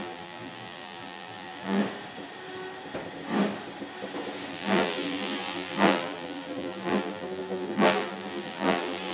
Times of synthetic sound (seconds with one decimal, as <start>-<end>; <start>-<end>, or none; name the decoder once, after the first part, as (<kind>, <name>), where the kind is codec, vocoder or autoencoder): 0.0-1.8 (vocoder, BigVGAN v2); 4.5-9.1